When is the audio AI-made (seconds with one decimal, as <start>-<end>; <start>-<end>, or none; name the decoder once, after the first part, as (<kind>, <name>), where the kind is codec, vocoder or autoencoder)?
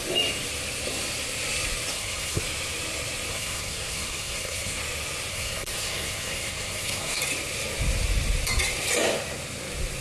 1.9-2.4 (codec, SNAC); 3.3-4.8; 5.3-7.2